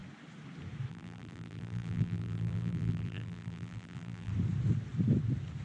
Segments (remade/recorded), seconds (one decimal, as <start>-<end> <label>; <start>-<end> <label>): 0.0-0.9 recorded; 0.9-4.3 remade; 4.3-5.6 recorded

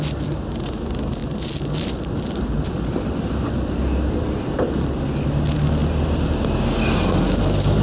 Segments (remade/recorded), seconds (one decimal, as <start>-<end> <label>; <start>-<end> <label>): 0.0-1.2 recorded; 1.2-5.0 remade; 5.0-7.8 recorded

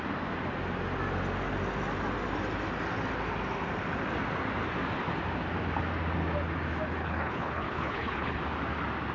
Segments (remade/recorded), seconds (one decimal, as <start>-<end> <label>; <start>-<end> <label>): 0.0-7.0 recorded; 7.0-8.4 remade; 8.4-9.1 recorded

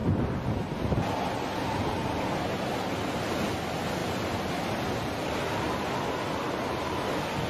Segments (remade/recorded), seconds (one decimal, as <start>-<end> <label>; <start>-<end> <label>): 0.0-7.5 recorded

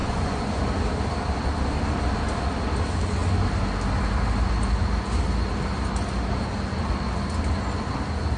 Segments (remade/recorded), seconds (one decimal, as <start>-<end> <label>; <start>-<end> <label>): 0.0-0.6 remade; 0.6-8.4 recorded

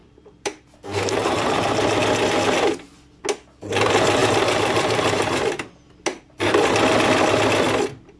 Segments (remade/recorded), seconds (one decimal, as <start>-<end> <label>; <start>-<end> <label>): 0.0-1.5 remade; 1.5-4.2 recorded; 4.2-5.5 remade; 5.5-6.1 recorded; 6.1-6.7 remade; 6.7-8.2 recorded

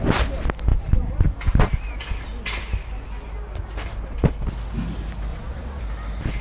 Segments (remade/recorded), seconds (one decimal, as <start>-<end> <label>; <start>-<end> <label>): 0.0-5.3 recorded; 5.3-5.8 remade; 5.8-6.4 recorded